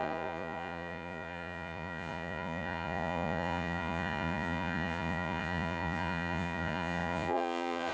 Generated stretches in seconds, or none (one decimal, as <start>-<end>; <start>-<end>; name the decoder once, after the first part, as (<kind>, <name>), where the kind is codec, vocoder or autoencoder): 0.0-7.9 (vocoder, Vocos)